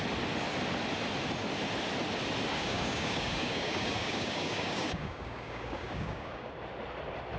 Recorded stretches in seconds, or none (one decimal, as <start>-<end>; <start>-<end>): 0.0-2.5; 6.5-7.4